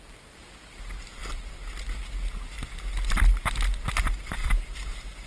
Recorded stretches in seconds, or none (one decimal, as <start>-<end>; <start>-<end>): 0.0-4.4